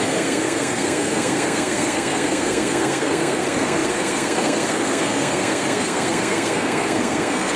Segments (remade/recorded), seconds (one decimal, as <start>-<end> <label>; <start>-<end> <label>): 0.0-7.6 remade